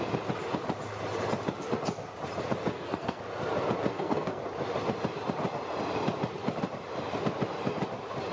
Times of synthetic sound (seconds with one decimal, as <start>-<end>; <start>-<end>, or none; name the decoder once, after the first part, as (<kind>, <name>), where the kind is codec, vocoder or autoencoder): 2.7-3.2 (codec, SNAC); 3.9-4.4